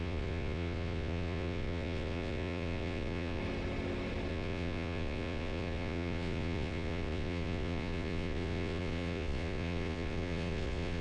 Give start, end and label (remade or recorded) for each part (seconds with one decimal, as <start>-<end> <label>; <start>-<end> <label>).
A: 0.0-3.4 remade; 3.4-4.3 recorded; 4.3-11.0 remade